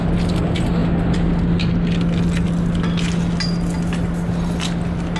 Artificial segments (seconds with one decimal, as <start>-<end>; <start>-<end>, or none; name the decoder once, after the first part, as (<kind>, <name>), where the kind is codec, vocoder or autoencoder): none